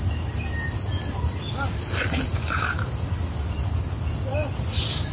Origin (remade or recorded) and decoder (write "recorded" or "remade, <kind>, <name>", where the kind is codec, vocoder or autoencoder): recorded